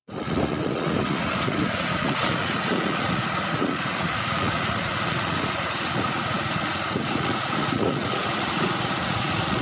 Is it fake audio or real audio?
fake